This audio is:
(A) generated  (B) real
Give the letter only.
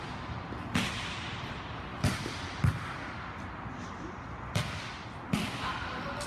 B